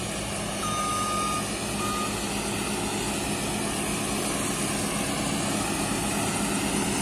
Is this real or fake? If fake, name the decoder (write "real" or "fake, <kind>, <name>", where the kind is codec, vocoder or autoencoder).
real